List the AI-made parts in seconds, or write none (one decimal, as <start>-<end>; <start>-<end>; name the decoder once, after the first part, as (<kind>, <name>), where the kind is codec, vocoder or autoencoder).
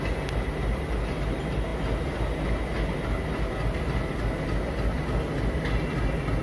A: none